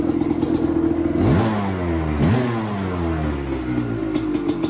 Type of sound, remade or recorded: recorded